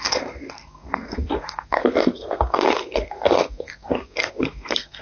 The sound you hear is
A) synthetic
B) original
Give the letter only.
A